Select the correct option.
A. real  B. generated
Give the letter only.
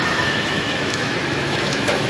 B